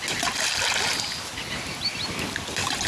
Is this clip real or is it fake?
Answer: real